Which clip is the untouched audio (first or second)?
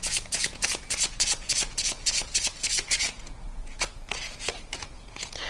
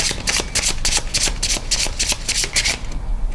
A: second